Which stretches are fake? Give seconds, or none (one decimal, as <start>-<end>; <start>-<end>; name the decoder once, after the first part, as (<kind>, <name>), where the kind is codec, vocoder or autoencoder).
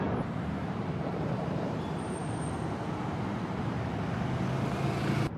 0.0-3.9 (vocoder, BigVGAN v2)